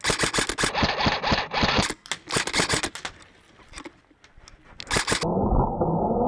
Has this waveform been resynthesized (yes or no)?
no